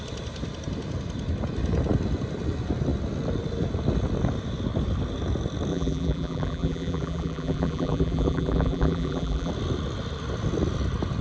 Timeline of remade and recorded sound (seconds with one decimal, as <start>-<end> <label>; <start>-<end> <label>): 0.0-5.7 recorded; 5.7-9.5 remade; 9.5-11.2 recorded